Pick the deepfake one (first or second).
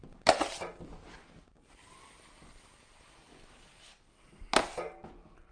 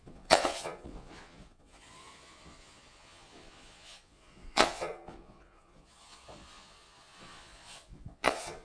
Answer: second